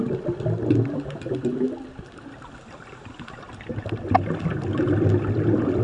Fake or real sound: real